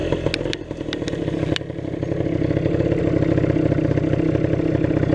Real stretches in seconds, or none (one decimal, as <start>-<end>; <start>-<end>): 0.0-5.1